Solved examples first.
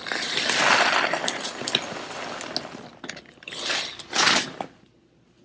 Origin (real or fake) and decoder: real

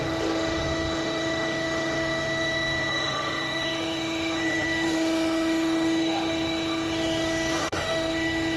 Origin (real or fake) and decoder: fake, autoencoder, DAC-VAE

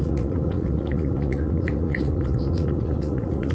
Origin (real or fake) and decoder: fake, vocoder, Vocos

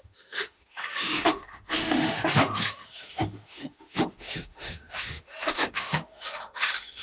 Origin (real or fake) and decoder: fake, autoencoder, DAC-VAE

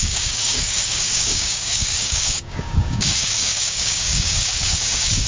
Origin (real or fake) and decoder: fake, codec, DAC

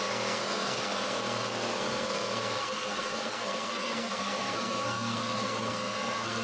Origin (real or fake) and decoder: fake, codec, SNAC